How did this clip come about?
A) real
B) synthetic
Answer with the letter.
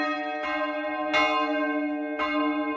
A